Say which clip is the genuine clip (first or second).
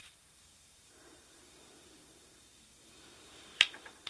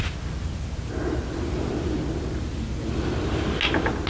second